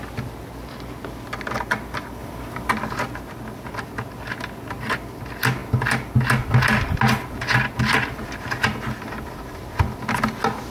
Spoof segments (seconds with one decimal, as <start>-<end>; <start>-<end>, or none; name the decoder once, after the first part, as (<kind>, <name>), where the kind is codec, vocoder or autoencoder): none